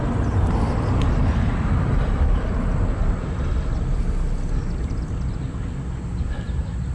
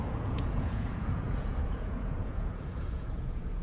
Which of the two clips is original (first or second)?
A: first